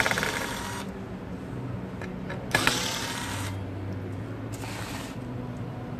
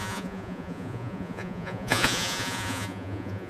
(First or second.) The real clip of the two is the first